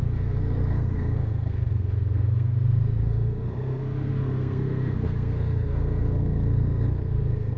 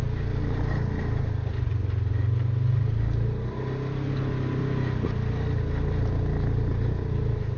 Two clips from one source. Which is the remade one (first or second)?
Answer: first